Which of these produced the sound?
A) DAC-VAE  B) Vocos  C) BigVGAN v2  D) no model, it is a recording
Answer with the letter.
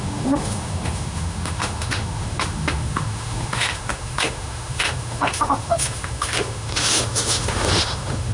A